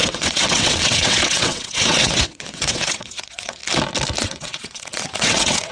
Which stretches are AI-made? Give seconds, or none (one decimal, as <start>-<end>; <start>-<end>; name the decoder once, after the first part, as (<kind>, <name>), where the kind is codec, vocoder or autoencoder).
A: 0.0-3.6 (vocoder, WaveNeXt); 4.2-5.7